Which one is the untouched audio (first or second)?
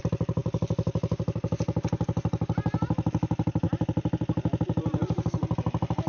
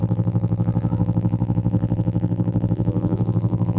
first